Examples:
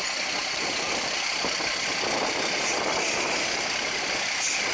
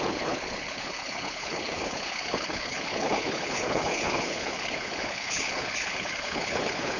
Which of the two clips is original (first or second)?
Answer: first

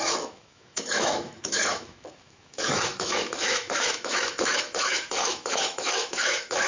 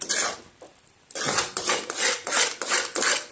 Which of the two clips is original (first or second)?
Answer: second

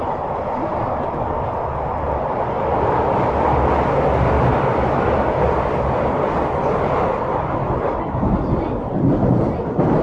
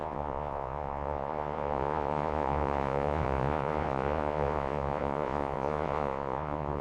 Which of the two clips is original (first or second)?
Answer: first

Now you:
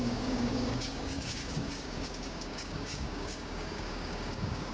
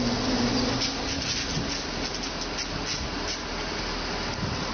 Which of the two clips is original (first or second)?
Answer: second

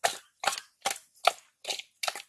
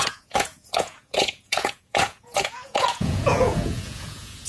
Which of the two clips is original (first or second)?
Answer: first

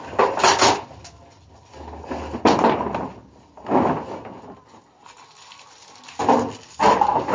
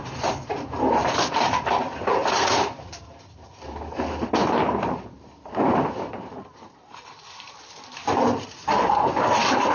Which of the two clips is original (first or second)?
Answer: first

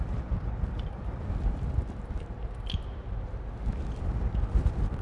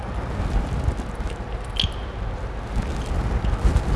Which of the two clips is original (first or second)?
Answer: second